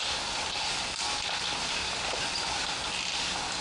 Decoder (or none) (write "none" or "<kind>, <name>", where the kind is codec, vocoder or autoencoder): none